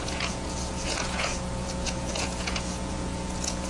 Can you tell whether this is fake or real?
fake